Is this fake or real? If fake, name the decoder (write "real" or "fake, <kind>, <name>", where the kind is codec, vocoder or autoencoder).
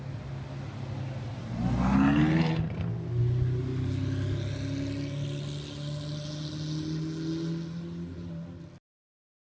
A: real